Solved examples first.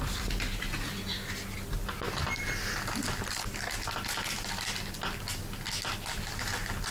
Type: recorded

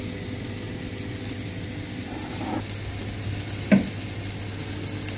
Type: recorded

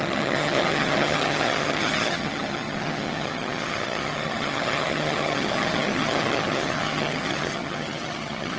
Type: remade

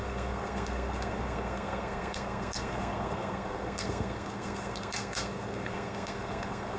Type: remade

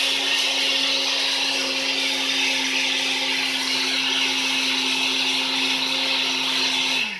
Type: recorded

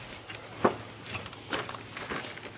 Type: recorded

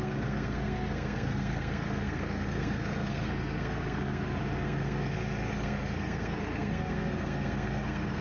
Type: remade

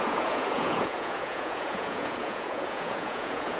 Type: remade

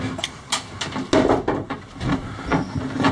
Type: recorded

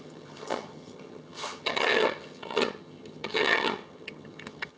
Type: remade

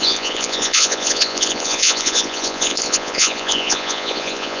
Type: remade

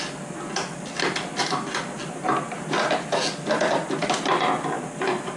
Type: recorded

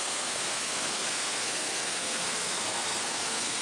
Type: remade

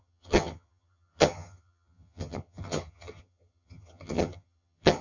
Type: remade